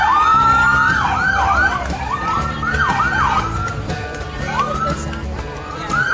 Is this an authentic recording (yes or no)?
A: no